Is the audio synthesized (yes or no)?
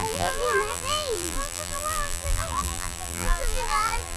yes